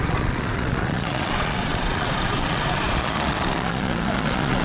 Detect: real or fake fake